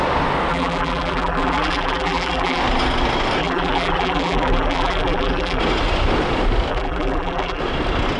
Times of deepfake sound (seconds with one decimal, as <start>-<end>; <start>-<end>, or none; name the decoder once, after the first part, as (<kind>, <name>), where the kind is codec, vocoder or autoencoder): 0.5-2.6 (vocoder, BigVGAN v2); 3.4-5.6; 6.7-7.6